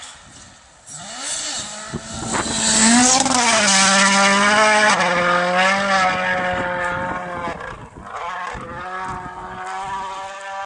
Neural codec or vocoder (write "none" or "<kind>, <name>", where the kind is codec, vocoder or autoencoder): none